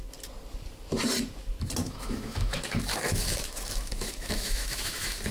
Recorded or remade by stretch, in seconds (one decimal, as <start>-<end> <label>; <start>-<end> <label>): 0.0-1.8 recorded; 1.8-5.3 remade